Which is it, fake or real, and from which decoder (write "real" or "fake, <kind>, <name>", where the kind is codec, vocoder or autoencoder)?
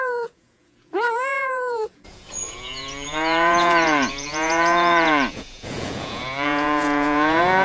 fake, vocoder, Vocos